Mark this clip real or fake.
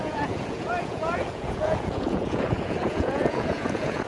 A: fake